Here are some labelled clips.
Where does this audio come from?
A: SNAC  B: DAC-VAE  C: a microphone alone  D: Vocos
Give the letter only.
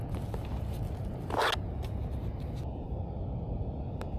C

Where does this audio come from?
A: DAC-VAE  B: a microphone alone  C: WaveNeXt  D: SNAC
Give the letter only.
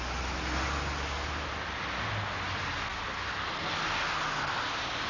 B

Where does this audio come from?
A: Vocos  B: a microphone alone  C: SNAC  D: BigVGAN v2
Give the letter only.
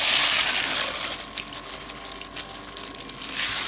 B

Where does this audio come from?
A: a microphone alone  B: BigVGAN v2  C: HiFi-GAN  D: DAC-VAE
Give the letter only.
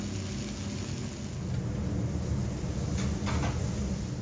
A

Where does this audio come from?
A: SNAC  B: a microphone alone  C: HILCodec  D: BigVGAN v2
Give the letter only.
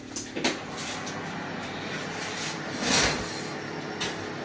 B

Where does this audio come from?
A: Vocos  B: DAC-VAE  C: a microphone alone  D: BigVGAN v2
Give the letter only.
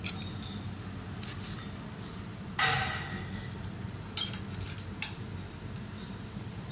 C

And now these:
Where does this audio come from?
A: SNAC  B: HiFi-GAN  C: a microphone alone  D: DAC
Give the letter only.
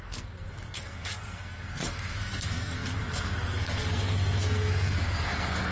A